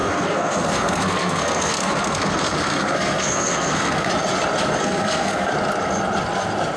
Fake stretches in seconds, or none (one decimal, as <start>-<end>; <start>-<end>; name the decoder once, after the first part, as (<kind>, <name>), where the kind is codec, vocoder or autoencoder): 0.0-4.1 (codec, SNAC); 4.8-5.5